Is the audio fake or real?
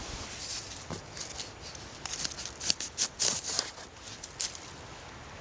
real